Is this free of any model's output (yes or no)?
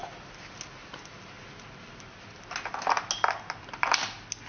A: yes